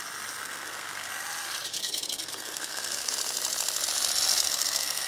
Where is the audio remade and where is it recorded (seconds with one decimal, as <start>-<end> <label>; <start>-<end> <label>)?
0.0-0.4 recorded; 0.4-1.1 remade; 1.1-1.7 recorded; 1.7-3.1 remade; 3.1-4.3 recorded; 4.3-5.1 remade